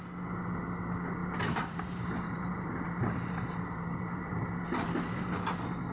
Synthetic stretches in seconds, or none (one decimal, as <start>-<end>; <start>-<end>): 1.2-4.5